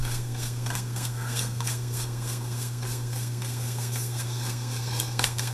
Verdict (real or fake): fake